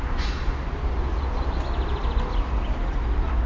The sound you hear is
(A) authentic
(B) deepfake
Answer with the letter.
A